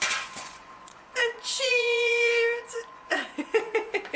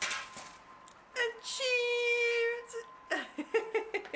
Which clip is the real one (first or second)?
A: second